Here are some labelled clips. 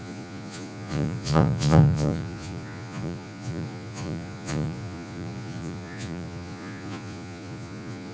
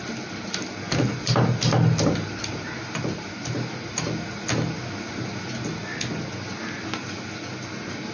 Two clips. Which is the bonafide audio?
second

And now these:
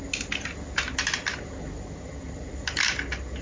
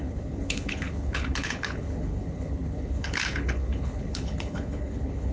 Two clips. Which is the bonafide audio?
first